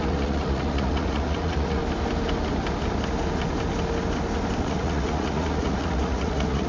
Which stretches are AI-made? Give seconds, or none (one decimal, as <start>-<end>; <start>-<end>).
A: 0.0-1.8; 4.6-6.7